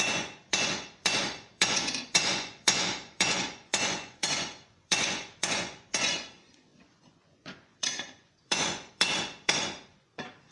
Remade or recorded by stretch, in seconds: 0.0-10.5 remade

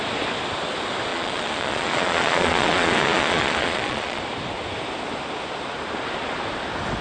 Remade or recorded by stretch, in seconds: 0.0-1.1 recorded; 1.1-4.2 remade; 4.2-7.0 recorded

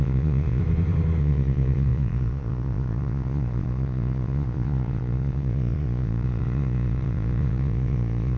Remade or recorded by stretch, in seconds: 0.0-0.6 remade; 0.6-1.2 recorded; 1.2-8.4 remade

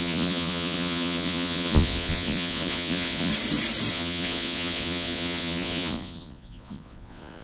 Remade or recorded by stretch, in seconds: 0.0-3.3 remade; 3.3-3.9 recorded; 3.9-7.4 remade

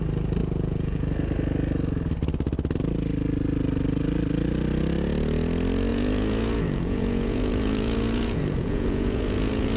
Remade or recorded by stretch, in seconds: 0.0-0.4 recorded; 0.4-1.1 remade; 1.1-5.9 recorded; 5.9-9.8 remade